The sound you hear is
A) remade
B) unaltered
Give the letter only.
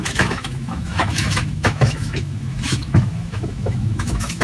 A